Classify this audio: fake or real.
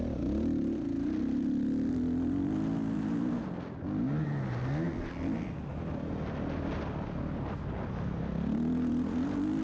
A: real